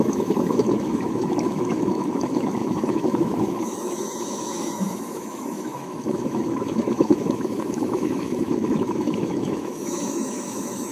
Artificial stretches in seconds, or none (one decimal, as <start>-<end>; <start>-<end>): 0.0-10.9